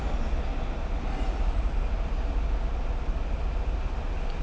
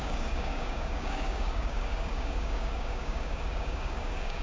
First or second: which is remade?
second